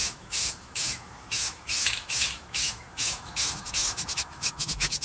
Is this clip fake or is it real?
fake